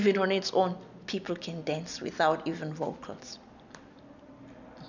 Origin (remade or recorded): recorded